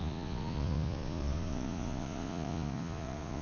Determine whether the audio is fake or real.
fake